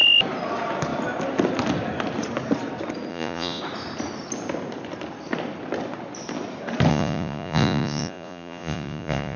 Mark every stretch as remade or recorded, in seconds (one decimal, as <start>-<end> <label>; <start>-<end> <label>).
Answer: 0.0-3.1 recorded; 3.1-3.6 remade; 3.6-6.9 recorded; 6.9-9.4 remade